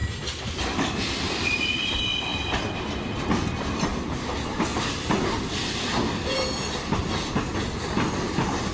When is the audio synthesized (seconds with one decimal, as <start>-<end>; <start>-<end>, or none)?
0.6-7.0